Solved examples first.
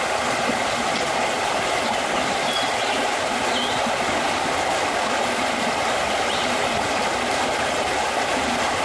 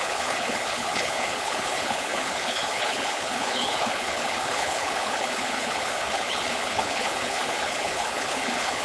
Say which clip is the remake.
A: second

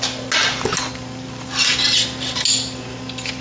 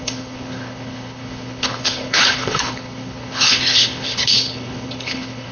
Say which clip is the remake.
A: second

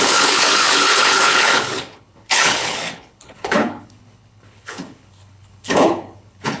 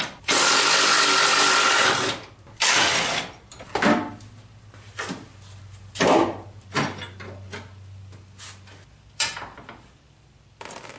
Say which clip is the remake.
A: first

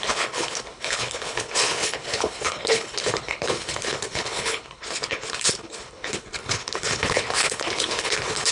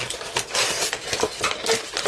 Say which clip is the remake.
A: first